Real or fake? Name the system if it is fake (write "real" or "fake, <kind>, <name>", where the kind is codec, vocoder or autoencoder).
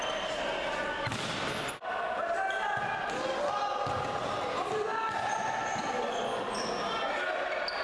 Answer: real